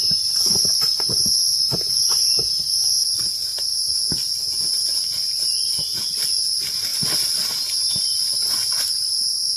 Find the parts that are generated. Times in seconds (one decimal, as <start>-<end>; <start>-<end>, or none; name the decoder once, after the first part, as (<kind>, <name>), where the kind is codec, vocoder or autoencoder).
0.0-6.9 (vocoder, BigVGAN v2); 7.9-9.6